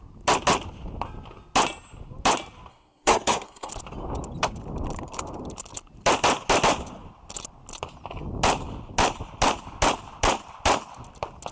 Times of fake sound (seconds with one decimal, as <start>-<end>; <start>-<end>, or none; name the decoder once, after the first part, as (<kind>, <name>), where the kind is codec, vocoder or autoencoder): 2.7-3.7 (codec, SNAC)

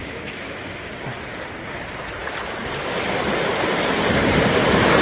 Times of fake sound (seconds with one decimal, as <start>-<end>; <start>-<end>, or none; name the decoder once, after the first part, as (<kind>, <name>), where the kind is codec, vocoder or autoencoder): 0.0-0.9 (autoencoder, DAC-VAE)

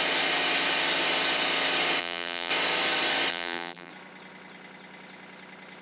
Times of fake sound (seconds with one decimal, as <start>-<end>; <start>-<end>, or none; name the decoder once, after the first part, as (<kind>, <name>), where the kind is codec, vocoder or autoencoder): 2.0-2.5 (vocoder, BigVGAN v2); 3.3-3.9